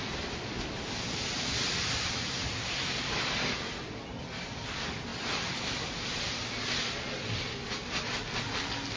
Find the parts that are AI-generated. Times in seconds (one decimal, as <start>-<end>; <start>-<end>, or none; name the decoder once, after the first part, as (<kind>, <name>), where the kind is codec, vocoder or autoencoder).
none